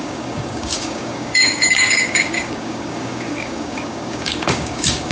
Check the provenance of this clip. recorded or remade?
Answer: remade